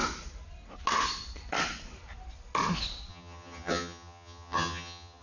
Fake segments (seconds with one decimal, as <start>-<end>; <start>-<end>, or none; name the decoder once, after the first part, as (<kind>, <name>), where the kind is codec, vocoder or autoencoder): 3.1-5.2 (vocoder, HiFi-GAN)